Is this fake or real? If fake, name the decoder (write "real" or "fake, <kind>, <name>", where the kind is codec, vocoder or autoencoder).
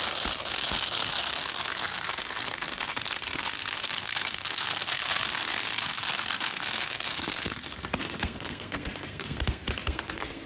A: fake, codec, SNAC